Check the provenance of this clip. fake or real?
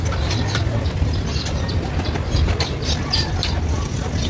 real